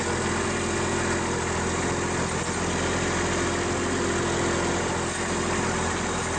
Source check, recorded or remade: recorded